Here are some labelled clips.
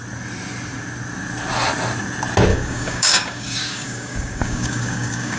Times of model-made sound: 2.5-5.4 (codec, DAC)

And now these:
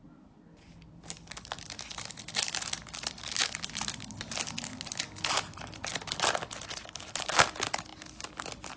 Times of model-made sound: none

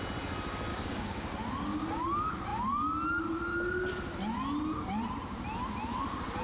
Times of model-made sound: 0.7-1.3 (codec, DAC)

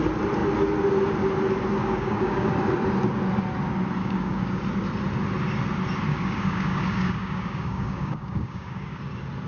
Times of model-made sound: 1.8-2.5 (codec, DAC); 4.0-4.6; 6.1-9.0

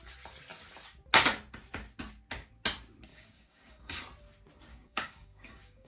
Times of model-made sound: 3.1-4.0 (codec, DAC); 4.7-5.9

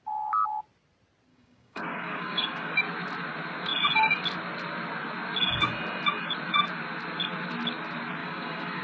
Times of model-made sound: 1.3-2.7 (codec, DAC); 8.2-8.8

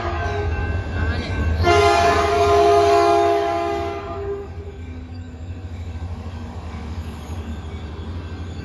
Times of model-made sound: 0.0-0.6 (codec, DAC); 1.4-7.5

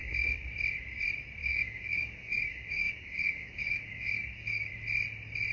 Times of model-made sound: 0.0-0.5 (codec, DAC); 1.4-4.7